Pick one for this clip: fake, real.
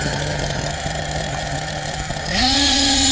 fake